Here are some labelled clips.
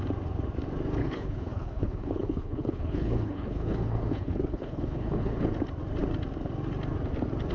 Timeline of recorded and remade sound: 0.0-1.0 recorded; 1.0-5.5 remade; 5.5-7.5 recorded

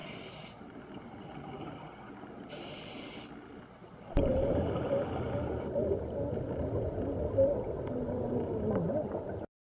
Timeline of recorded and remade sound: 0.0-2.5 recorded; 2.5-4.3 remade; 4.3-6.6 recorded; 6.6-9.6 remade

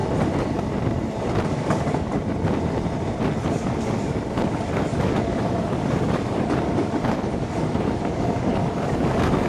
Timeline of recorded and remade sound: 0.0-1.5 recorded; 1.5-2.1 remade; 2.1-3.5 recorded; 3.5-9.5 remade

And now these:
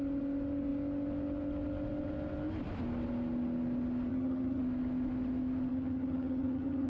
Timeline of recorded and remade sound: 0.0-4.1 recorded; 4.1-4.6 remade; 4.6-5.7 recorded; 5.7-6.9 remade

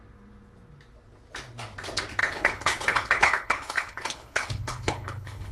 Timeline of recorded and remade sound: 0.0-2.2 recorded; 2.2-5.5 remade

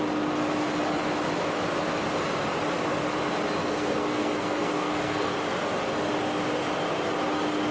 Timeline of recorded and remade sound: 0.0-3.6 recorded; 3.6-5.3 remade; 5.3-7.7 recorded

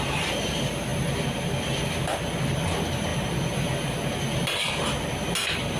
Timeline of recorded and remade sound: 0.0-5.8 recorded

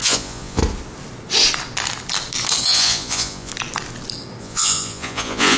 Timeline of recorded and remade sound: 0.0-0.6 remade; 0.6-2.6 recorded; 2.6-3.5 remade; 3.5-4.4 recorded; 4.4-5.6 remade